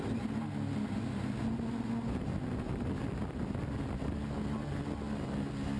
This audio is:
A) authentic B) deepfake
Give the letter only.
A